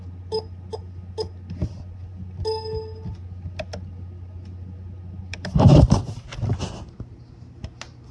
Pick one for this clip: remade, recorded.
recorded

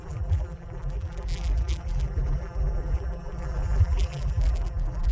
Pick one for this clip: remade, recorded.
remade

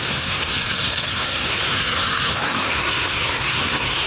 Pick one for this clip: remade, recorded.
remade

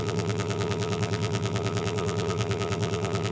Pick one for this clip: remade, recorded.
remade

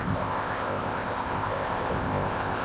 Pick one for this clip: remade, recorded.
remade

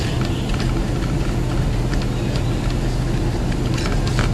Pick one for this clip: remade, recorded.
recorded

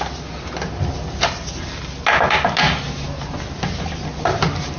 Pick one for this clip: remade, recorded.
recorded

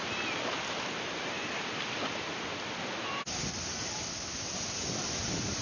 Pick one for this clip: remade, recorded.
recorded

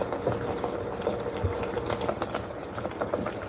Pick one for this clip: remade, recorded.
recorded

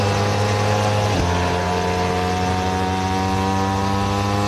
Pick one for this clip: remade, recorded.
recorded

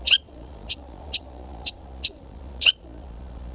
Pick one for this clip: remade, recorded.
remade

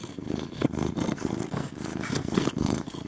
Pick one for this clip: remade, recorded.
remade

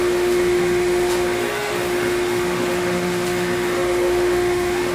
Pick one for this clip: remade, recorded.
remade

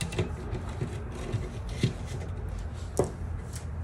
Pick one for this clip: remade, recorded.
recorded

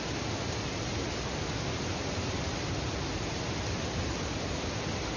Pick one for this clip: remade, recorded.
recorded